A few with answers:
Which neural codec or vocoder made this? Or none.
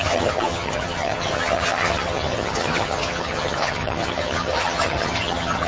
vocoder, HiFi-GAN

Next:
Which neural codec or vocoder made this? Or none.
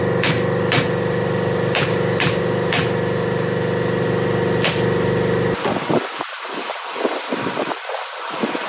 none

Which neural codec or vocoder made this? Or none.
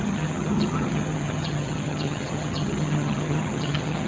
vocoder, HiFi-GAN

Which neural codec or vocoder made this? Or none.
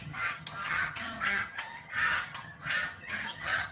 vocoder, HiFi-GAN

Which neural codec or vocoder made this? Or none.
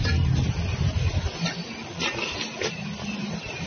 none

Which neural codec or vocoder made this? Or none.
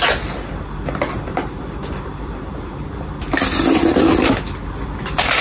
none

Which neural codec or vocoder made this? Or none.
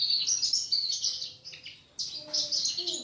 none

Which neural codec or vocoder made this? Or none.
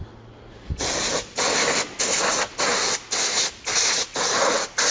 none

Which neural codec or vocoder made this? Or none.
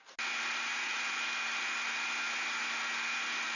none